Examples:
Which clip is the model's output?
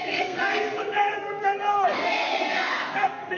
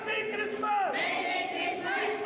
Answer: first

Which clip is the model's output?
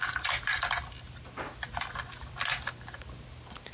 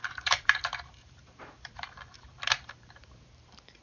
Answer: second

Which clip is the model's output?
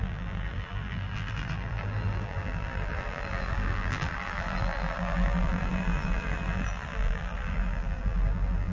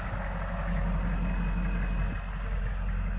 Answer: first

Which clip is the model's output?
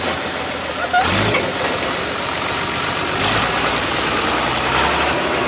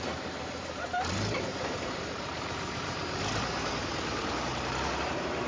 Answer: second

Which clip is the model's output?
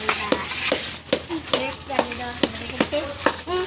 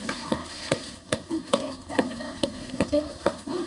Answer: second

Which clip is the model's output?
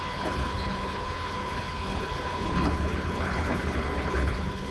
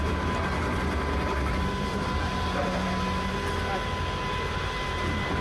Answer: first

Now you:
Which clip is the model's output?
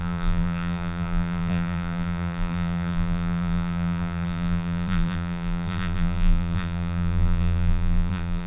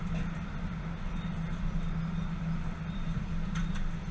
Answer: first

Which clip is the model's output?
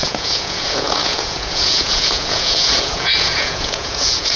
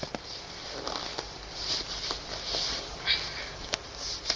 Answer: first